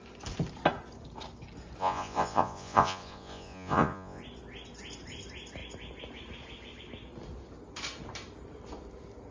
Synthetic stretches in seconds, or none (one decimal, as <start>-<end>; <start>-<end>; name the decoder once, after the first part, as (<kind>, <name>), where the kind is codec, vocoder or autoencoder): 1.8-4.2 (vocoder, Vocos)